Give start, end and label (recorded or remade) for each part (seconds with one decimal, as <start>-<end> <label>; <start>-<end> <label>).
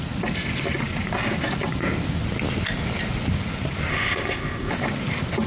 0.0-3.9 recorded; 3.9-4.7 remade; 4.7-5.5 recorded